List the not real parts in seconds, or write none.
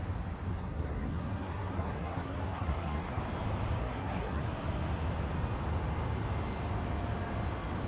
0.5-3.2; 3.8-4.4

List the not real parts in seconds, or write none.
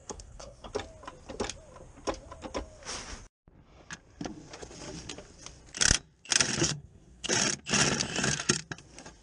0.0-0.7; 6.6-7.3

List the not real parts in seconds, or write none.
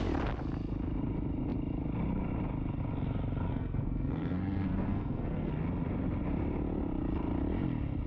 3.5-5.5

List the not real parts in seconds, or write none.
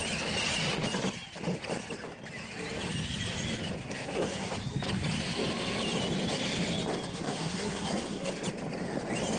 3.8-4.5; 7.1-8.3